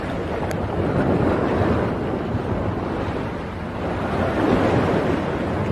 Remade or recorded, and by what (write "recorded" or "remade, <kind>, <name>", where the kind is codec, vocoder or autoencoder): recorded